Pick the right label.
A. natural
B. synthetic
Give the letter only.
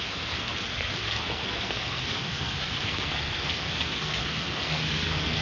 B